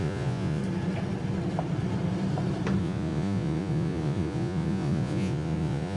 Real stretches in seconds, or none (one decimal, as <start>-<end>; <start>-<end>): 0.6-2.8